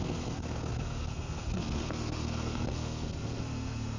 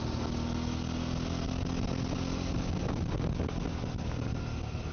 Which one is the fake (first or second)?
first